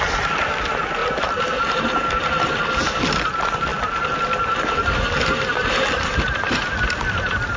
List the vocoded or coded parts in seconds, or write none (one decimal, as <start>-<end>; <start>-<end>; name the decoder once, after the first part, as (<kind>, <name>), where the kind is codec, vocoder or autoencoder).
none